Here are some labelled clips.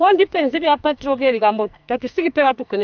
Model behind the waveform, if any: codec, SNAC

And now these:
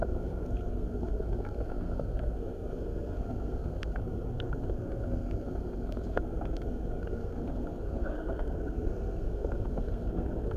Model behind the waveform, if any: codec, SNAC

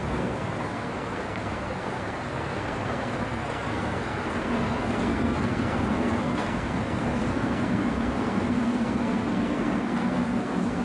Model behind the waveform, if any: codec, SNAC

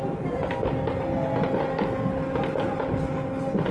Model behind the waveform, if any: none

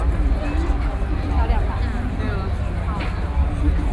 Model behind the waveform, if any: none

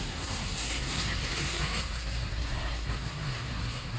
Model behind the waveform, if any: codec, SNAC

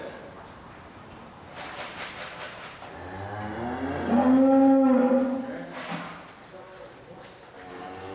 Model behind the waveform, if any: none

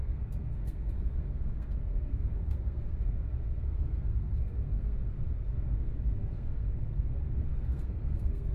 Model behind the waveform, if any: codec, SNAC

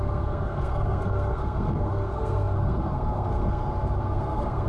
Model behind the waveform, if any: codec, SNAC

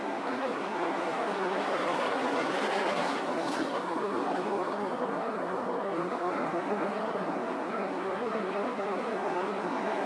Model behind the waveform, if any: codec, SNAC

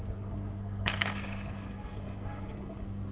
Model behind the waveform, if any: codec, SNAC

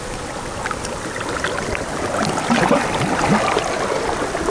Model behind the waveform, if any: none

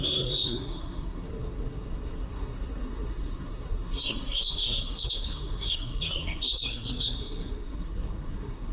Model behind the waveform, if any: codec, SNAC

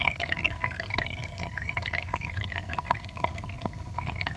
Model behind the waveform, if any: codec, SNAC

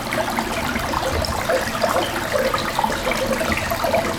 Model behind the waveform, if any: none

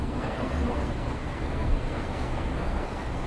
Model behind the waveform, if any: codec, SNAC